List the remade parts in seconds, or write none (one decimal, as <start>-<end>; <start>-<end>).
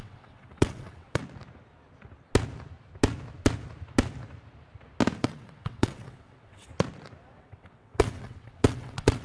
0.0-1.2; 5.2-6.7; 7.4-9.2